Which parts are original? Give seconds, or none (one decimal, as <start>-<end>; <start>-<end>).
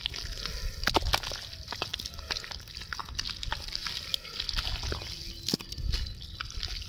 0.0-6.9